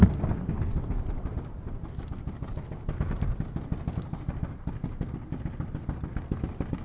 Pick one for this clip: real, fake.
real